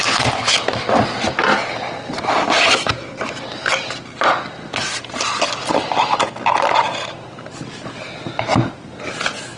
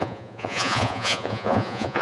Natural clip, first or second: first